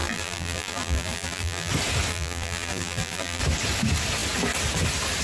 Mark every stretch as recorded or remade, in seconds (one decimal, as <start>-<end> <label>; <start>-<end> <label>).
0.0-1.7 remade; 1.7-2.1 recorded; 2.1-3.4 remade; 3.4-5.2 recorded